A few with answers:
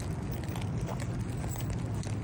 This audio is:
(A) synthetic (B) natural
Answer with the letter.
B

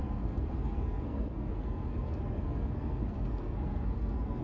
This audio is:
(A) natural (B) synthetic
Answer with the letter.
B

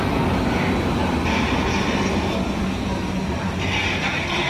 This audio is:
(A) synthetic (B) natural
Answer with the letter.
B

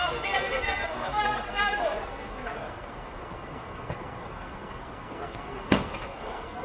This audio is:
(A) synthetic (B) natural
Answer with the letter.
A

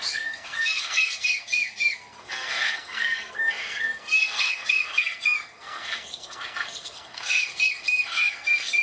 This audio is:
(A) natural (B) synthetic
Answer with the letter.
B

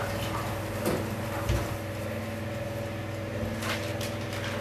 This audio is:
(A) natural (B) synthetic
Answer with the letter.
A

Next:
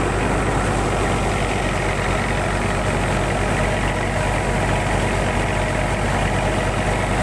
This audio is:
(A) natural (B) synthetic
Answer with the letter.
A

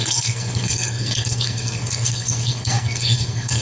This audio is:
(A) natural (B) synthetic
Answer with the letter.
B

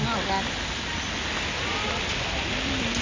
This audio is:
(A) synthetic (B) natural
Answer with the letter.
B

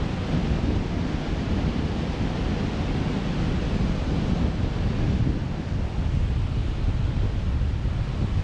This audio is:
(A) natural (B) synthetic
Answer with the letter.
A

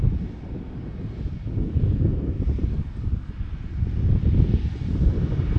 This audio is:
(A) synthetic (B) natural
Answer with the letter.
B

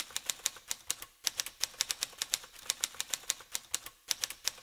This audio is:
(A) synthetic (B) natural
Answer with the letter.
B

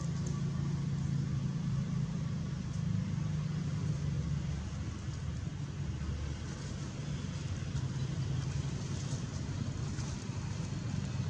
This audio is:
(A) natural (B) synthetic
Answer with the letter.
A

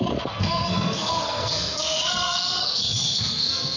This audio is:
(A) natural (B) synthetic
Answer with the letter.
B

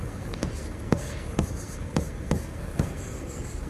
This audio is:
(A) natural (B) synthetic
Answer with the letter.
B